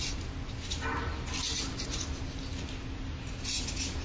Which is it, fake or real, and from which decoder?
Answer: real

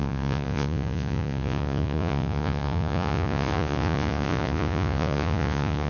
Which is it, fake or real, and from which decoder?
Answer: fake, vocoder, Vocos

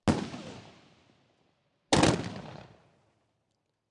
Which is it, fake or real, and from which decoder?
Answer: real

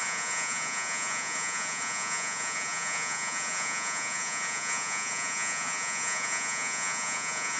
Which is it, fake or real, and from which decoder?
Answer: fake, vocoder, Vocos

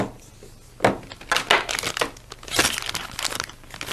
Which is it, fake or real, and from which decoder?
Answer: real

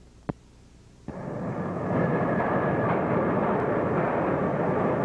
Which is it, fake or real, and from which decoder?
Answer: real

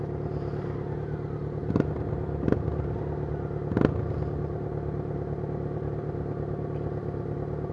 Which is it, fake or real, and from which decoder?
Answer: real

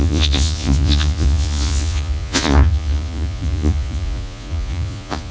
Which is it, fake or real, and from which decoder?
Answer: fake, vocoder, Vocos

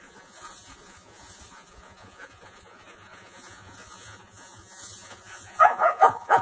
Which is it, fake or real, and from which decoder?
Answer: fake, vocoder, Vocos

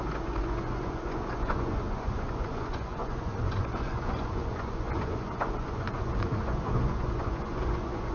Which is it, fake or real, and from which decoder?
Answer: fake, vocoder, Vocos